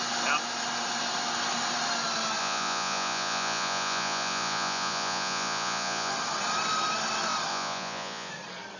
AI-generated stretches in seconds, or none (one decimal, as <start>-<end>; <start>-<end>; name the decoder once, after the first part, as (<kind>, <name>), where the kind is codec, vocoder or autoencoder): 2.4-6.1 (vocoder, Vocos); 7.5-8.3